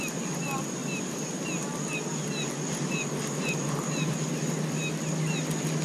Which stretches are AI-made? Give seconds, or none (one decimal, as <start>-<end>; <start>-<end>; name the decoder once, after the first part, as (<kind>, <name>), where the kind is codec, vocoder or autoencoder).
none